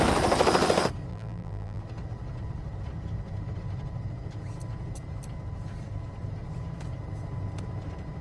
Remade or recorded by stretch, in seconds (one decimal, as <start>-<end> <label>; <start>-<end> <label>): 0.0-1.1 recorded; 1.1-1.8 remade; 1.8-8.2 recorded